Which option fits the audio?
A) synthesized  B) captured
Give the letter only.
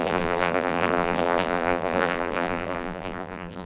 A